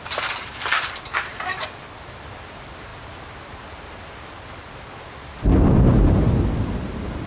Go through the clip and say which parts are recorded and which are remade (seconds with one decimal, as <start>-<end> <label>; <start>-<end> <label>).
0.0-7.3 recorded